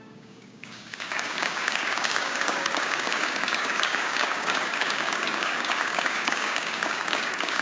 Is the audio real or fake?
fake